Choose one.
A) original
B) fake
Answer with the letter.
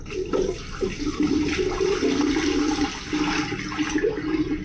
A